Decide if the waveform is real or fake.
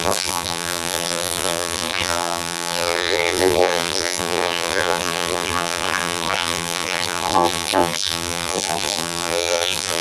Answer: fake